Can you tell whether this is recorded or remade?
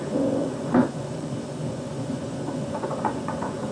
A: remade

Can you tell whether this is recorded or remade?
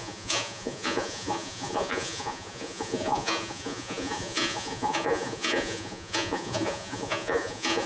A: remade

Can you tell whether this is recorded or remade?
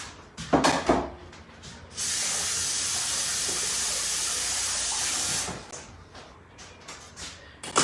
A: recorded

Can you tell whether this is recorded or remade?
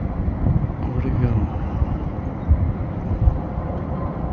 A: recorded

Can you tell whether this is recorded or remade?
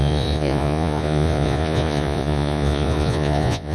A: remade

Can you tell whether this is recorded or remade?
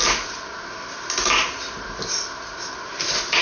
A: recorded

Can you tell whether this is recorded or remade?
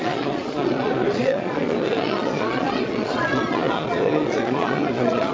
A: remade